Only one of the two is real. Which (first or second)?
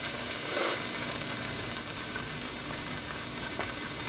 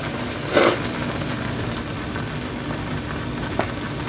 second